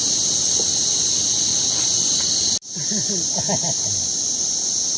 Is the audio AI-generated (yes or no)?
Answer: no